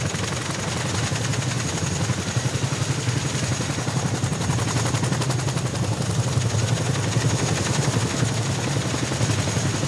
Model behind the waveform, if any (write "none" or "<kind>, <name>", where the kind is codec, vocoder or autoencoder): none